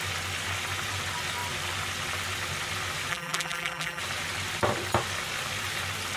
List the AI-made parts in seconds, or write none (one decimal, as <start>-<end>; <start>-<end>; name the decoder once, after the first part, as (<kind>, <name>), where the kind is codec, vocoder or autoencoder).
3.1-4.0 (vocoder, BigVGAN v2)